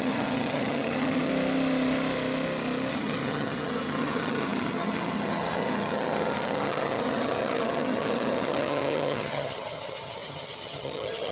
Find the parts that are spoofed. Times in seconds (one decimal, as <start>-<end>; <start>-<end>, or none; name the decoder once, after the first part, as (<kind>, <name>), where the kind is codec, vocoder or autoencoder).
0.0-1.3 (vocoder, HiFi-GAN); 2.9-11.3